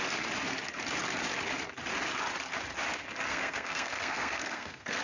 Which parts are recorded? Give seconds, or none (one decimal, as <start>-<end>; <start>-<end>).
0.0-3.3